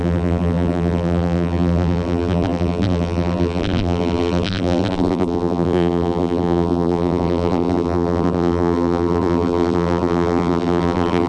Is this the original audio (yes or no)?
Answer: no